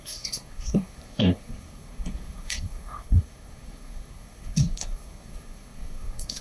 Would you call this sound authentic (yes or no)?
no